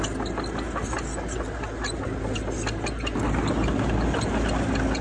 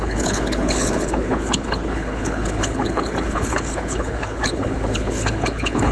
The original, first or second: first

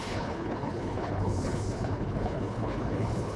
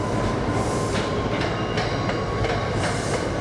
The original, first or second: second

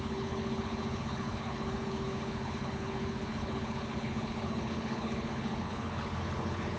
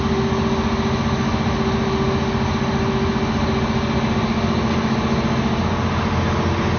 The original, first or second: second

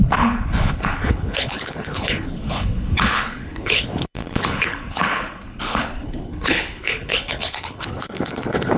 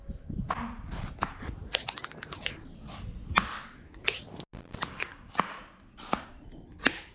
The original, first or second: second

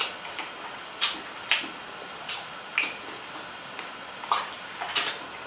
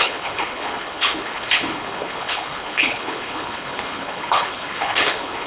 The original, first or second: first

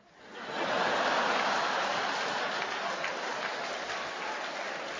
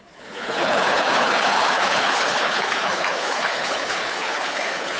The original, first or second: first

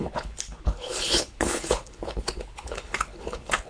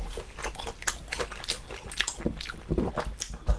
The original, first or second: second